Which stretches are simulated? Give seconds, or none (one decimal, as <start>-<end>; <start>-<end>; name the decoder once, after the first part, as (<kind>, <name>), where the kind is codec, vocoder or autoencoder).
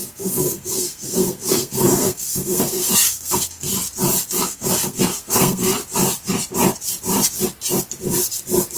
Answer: 0.0-3.7 (codec, SNAC); 4.4-5.8